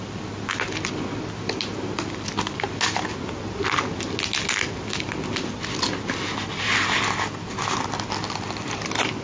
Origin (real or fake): real